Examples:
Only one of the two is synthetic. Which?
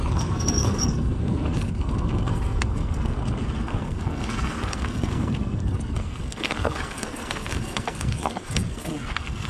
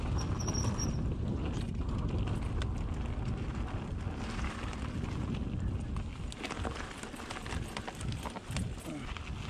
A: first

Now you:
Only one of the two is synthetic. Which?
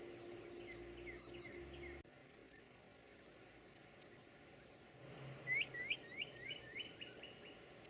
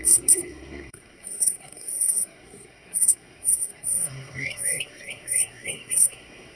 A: second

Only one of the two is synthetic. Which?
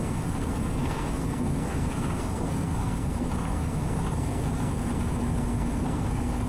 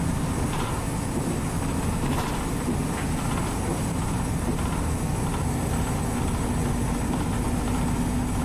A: first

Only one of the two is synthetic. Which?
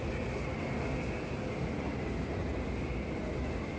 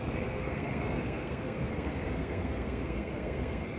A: second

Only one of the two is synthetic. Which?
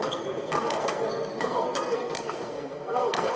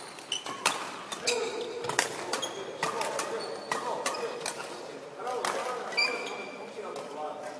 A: first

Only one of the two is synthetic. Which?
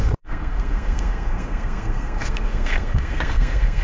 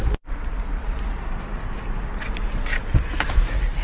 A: first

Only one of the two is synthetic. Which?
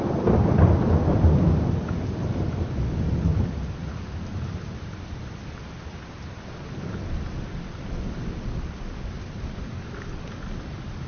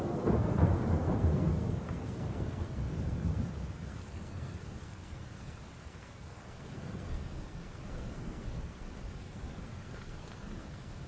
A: second